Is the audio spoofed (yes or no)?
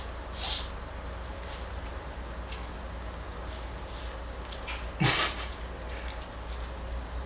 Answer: no